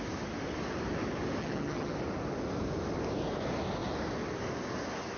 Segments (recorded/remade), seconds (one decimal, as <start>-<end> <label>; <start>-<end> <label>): 0.0-1.4 recorded; 1.4-1.9 remade; 1.9-5.2 recorded